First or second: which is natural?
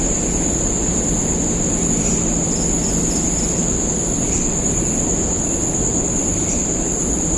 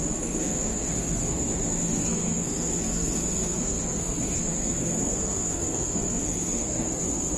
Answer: first